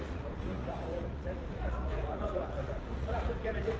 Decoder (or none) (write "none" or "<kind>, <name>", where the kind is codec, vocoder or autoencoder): vocoder, Vocos